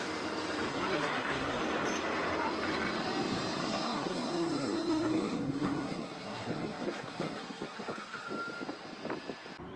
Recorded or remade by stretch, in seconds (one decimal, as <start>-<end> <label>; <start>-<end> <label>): 0.0-0.7 recorded; 0.7-1.6 remade; 1.6-3.6 recorded; 3.6-8.3 remade; 8.3-9.8 recorded